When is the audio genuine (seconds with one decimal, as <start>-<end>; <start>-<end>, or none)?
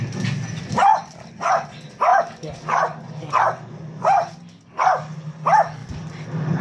0.0-5.8